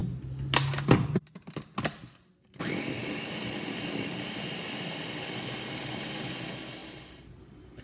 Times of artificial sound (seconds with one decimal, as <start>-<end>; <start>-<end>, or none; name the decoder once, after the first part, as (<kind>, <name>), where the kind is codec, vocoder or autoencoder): 3.0-4.6 (vocoder, BigVGAN v2); 6.8-7.3

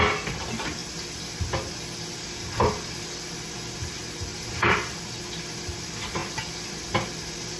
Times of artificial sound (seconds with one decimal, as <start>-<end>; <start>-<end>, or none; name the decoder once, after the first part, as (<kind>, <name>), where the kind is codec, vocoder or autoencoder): 4.3-5.0 (vocoder, BigVGAN v2)

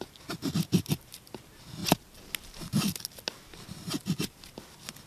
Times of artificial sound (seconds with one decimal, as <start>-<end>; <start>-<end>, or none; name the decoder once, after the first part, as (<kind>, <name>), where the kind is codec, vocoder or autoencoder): none

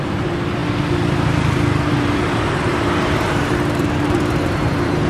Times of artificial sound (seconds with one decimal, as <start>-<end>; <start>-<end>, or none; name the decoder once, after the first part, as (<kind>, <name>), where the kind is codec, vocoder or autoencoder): 0.0-0.6 (vocoder, BigVGAN v2); 1.9-5.1

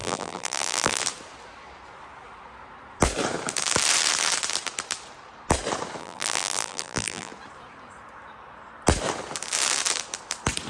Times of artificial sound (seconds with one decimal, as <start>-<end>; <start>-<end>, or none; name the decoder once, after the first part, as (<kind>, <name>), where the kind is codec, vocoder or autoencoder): 0.0-1.0 (vocoder, BigVGAN v2); 6.0-7.3